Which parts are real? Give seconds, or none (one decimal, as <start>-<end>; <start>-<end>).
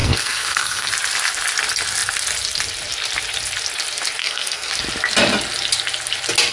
0.9-4.2; 4.7-6.5